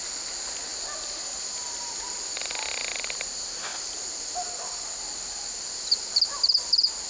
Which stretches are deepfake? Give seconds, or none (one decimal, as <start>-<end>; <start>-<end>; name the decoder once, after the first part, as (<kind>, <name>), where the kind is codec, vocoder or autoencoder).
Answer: none